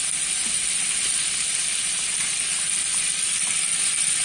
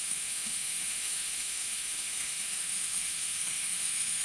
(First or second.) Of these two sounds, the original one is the first